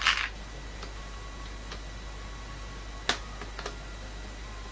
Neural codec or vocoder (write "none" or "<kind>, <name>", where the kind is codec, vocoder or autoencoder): none